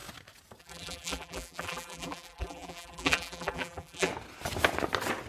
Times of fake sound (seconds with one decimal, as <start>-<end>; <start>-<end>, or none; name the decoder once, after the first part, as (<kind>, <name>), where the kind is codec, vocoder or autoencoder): 0.6-4.1 (vocoder, BigVGAN v2)